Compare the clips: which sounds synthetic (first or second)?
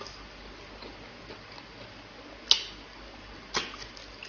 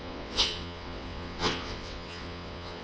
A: second